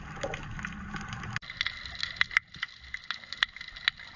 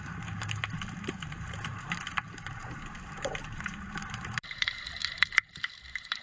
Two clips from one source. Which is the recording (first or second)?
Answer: first